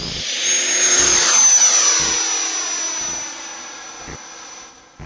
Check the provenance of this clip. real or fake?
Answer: real